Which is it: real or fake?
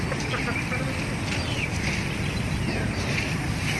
real